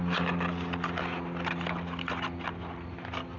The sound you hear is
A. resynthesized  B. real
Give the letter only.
B